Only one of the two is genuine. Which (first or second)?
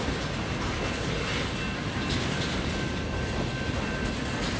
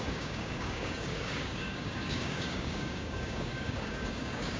first